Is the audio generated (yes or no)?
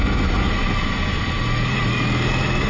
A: no